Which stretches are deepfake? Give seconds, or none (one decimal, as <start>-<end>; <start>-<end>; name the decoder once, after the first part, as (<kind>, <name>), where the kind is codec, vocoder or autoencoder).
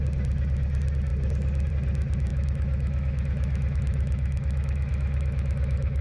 2.3-6.0 (autoencoder, DAC-VAE)